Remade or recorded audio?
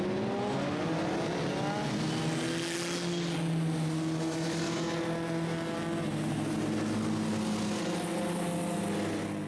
recorded